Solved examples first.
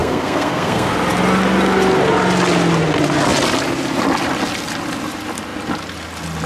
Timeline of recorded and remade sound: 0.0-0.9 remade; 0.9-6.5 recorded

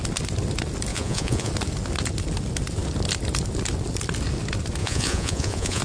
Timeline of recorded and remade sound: 0.0-0.9 recorded; 0.9-1.5 remade; 1.5-4.8 recorded; 4.8-5.8 remade

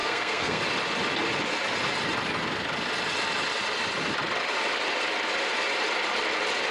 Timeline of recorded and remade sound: 0.0-0.6 remade; 0.6-6.7 recorded

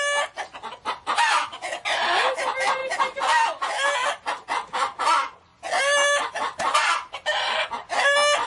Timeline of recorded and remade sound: 0.0-8.5 recorded